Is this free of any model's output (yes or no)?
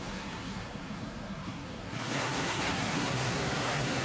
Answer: no